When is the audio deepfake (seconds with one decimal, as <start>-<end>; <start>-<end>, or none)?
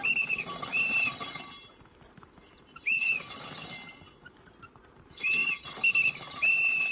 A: none